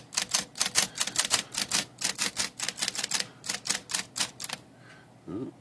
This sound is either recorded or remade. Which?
recorded